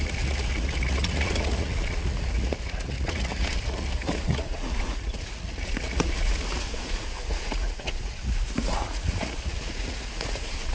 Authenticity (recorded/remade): remade